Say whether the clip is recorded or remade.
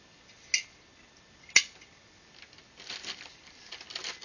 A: recorded